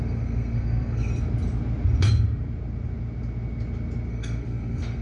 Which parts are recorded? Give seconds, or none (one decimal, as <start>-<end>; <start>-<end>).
1.1-4.1